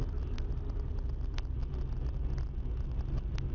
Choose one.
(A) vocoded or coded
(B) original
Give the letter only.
B